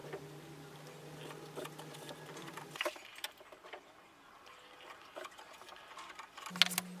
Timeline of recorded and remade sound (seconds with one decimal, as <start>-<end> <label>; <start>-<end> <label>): 0.0-7.0 recorded